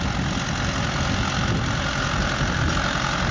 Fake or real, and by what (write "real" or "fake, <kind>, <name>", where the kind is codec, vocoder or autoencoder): real